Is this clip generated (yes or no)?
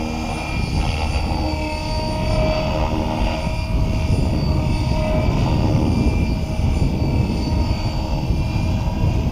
no